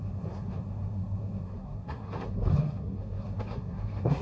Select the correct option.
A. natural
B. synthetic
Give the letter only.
B